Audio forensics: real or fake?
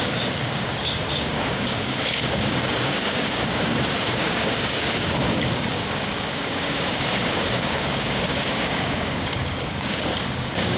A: fake